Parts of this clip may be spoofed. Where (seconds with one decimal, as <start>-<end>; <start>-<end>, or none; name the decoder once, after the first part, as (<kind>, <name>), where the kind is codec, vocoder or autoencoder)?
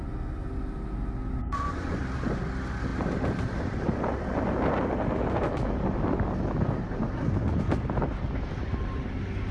1.4-2.0 (vocoder, Vocos)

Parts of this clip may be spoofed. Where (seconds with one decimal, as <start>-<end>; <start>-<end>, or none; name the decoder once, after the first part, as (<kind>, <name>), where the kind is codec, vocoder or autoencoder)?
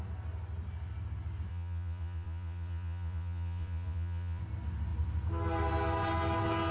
1.5-4.4 (vocoder, Vocos)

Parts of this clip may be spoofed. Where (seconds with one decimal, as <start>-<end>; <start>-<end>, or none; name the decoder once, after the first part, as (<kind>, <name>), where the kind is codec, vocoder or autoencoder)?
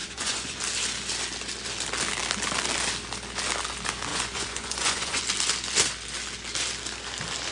0.0-0.6 (vocoder, Vocos); 4.1-5.2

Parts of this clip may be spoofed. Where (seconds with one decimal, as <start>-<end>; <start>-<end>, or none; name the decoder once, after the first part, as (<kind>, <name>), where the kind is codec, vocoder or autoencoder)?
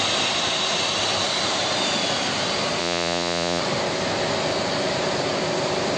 2.8-3.6 (vocoder, Vocos)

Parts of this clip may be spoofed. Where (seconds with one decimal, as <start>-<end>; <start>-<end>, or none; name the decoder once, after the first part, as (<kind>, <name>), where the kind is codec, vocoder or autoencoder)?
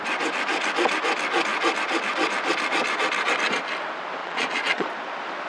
4.2-4.9 (vocoder, Vocos)